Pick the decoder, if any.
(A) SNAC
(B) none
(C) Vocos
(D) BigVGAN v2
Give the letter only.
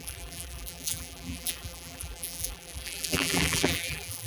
D